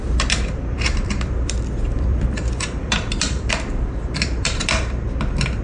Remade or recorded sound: remade